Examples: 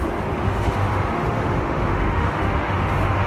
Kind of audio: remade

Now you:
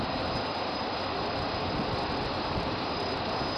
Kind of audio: recorded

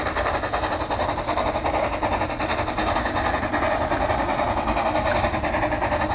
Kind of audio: recorded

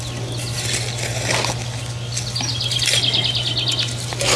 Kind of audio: recorded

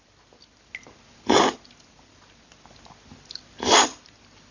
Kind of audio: recorded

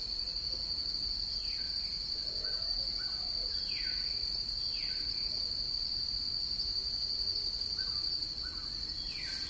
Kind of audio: recorded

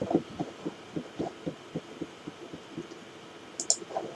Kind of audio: recorded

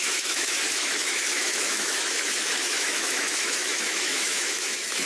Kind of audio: remade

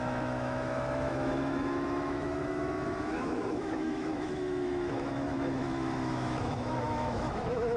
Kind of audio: remade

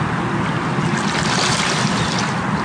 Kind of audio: recorded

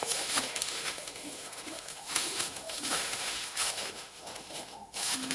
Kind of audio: remade